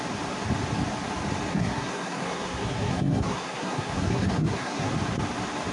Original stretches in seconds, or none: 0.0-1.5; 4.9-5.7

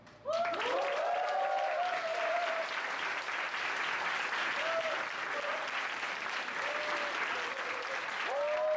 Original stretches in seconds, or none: 0.0-8.8